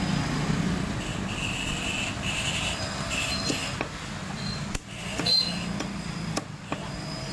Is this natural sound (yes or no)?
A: yes